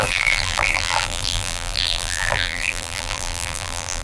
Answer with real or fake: fake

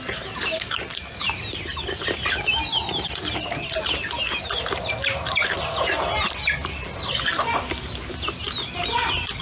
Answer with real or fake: real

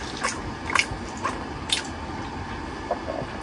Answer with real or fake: real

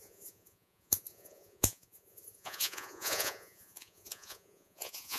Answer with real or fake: fake